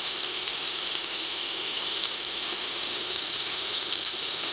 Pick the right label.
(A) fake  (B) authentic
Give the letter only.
A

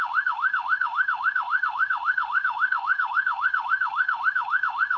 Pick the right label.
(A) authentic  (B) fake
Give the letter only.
B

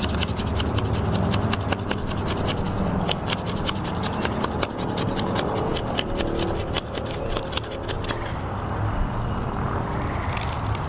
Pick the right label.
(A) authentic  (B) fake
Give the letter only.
A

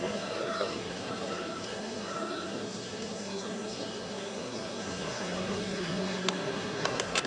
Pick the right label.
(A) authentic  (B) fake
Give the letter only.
B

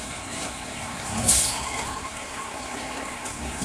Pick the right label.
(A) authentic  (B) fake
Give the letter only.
B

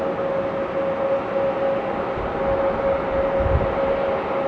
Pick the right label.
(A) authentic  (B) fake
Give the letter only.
A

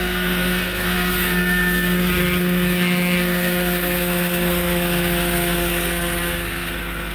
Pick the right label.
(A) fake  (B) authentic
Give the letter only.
A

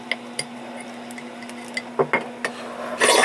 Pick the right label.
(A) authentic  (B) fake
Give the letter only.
A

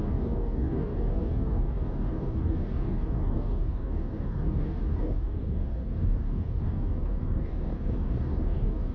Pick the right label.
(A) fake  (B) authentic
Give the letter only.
A